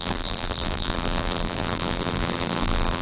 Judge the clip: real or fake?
fake